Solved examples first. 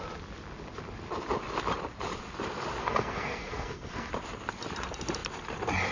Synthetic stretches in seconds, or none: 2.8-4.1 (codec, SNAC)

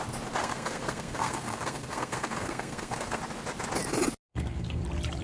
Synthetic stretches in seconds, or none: 0.4-3.2 (codec, SNAC); 4.3-4.8

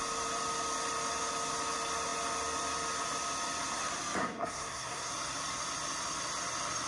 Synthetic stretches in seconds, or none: 4.2-5.1 (codec, SNAC)